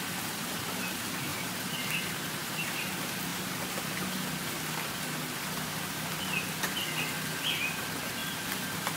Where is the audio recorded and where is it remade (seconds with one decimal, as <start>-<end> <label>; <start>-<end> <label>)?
0.0-8.2 recorded; 8.2-9.0 remade

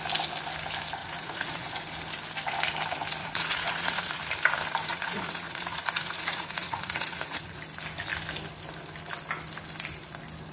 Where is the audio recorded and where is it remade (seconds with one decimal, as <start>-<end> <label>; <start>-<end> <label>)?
0.0-1.0 recorded; 1.0-1.7 remade; 1.7-3.2 recorded; 3.2-4.2 remade; 4.2-4.9 recorded; 4.9-7.6 remade; 7.6-10.5 recorded

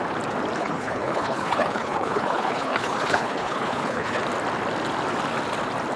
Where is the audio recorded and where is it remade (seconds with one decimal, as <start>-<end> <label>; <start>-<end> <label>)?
0.0-0.6 recorded; 0.6-4.2 remade; 4.2-6.0 recorded

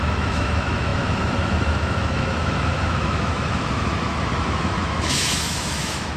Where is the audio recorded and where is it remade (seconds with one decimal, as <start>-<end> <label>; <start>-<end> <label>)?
0.0-6.2 remade

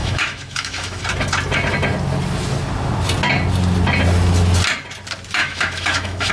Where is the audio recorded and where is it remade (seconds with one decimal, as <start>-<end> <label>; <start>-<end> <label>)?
0.0-1.0 remade; 1.0-5.4 recorded; 5.4-6.3 remade

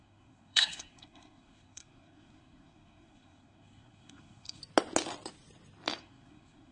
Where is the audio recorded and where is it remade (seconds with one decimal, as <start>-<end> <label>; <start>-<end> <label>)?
0.0-4.6 remade; 4.6-6.0 recorded; 6.0-6.7 remade